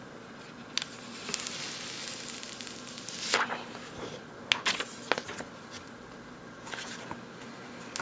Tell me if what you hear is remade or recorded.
recorded